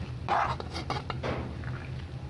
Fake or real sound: real